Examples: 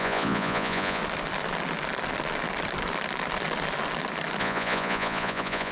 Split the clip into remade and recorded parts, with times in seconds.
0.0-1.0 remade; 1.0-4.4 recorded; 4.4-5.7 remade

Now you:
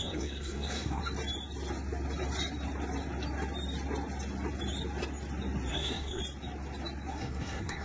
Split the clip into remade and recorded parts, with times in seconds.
0.0-1.0 remade; 1.0-5.7 recorded; 5.7-6.2 remade; 6.2-7.1 recorded; 7.1-7.8 remade

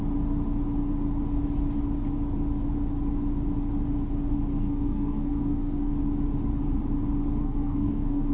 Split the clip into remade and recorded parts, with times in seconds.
0.0-4.5 recorded; 4.5-5.9 remade; 5.9-7.4 recorded; 7.4-8.3 remade

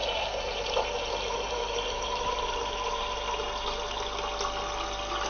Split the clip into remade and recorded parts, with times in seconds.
0.0-3.1 remade; 3.1-5.3 recorded

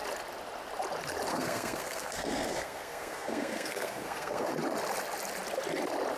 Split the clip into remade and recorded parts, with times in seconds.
0.0-1.3 recorded; 1.3-4.5 remade; 4.5-6.2 recorded

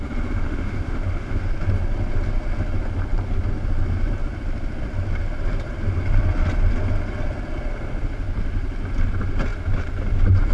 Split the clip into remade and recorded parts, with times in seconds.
0.0-0.4 recorded; 0.4-1.5 remade; 1.5-10.5 recorded

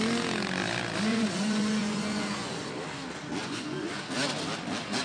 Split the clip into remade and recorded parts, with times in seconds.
0.0-1.1 recorded; 1.1-2.7 remade; 2.7-3.4 recorded; 3.4-4.0 remade; 4.0-5.0 recorded